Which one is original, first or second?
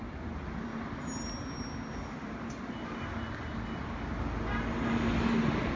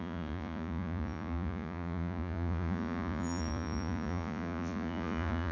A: first